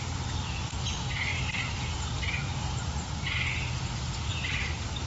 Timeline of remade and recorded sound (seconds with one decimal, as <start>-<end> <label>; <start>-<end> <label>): 0.0-1.3 recorded; 1.3-2.1 remade; 2.1-5.1 recorded